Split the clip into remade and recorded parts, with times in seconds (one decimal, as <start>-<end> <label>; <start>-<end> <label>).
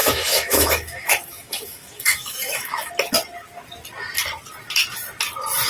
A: 0.0-2.9 remade; 2.9-5.7 recorded